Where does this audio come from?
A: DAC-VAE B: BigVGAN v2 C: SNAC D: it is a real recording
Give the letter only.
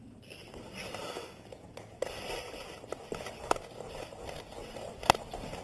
D